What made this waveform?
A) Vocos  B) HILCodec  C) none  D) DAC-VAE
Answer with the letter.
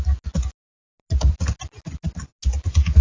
C